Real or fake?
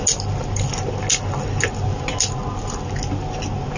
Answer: real